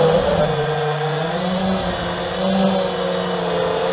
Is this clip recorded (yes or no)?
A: yes